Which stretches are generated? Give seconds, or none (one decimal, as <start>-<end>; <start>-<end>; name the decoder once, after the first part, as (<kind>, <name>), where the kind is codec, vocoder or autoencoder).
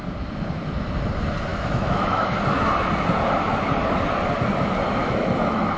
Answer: 1.5-2.4 (autoencoder, DAC-VAE); 5.0-5.8